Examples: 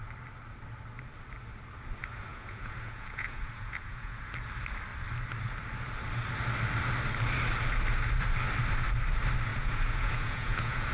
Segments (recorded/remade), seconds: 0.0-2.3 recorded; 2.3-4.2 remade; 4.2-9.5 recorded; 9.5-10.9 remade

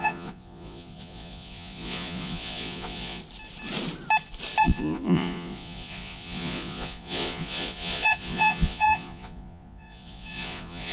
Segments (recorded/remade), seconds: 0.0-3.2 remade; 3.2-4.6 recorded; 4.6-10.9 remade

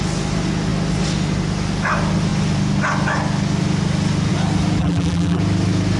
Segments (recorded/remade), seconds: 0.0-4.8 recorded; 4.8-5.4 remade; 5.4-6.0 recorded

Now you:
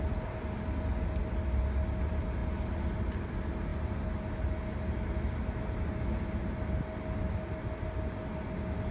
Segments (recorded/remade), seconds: 0.0-8.9 recorded